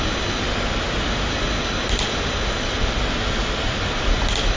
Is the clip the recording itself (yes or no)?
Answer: yes